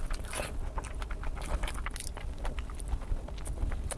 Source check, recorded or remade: recorded